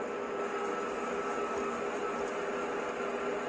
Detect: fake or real real